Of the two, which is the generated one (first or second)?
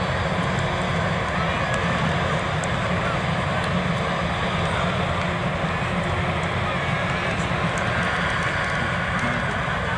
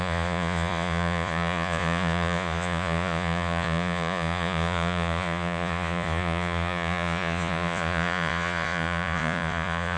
second